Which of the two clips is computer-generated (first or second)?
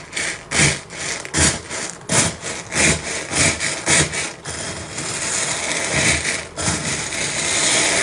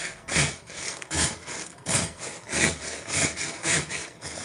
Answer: second